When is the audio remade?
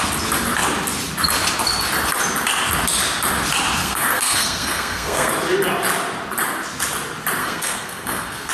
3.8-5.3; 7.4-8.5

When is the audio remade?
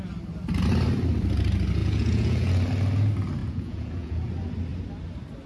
1.8-2.5; 3.4-4.3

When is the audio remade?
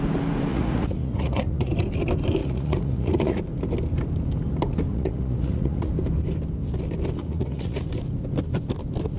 0.5-1.7; 2.4-3.4; 4.9-5.9; 7.2-7.8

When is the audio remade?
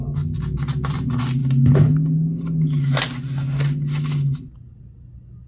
none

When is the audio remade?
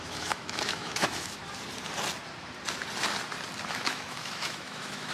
0.0-1.4; 3.7-5.1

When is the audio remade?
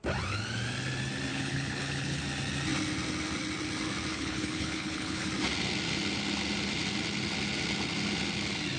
1.3-2.2; 4.1-5.3